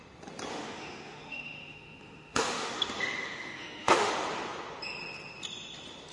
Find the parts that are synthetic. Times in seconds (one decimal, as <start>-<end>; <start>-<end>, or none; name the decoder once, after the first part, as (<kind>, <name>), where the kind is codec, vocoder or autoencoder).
0.5-4.1 (autoencoder, DAC-VAE)